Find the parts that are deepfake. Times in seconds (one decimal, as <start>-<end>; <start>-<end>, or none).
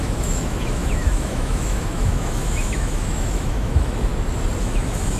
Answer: 0.0-4.1; 4.6-5.2